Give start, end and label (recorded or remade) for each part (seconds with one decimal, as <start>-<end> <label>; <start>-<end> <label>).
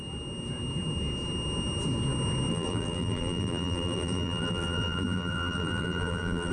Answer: 0.0-2.5 recorded; 2.5-6.5 remade